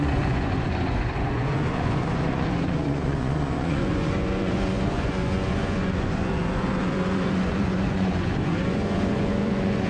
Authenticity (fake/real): fake